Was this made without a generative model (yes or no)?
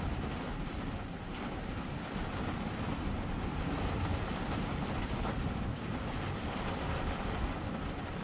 yes